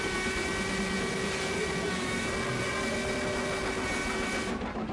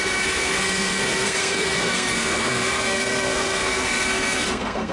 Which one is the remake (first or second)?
second